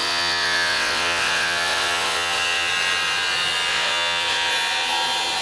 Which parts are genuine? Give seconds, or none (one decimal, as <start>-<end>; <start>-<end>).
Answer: 2.7-3.7; 4.5-5.4